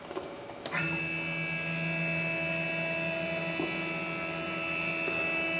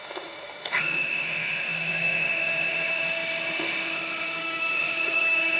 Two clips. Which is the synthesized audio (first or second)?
second